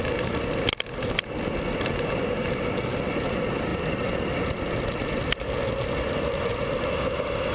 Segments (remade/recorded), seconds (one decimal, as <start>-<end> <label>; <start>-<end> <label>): 0.0-7.5 recorded